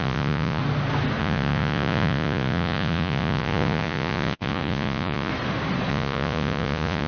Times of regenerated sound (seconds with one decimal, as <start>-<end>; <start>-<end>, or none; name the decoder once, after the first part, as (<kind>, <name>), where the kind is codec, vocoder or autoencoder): 0.0-0.6 (vocoder, Vocos); 1.2-5.3; 5.9-7.1